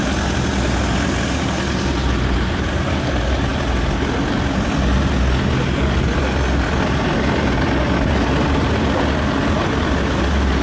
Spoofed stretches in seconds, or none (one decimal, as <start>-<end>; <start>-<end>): 2.0-2.9